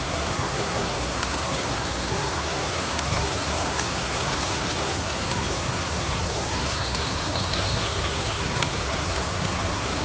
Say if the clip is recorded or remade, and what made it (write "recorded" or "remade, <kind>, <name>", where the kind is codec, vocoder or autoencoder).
remade, codec, SNAC